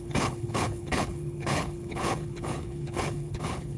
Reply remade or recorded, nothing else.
remade